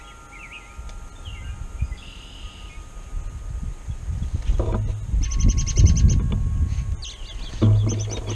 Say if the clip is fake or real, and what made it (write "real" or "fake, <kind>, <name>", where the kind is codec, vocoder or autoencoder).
real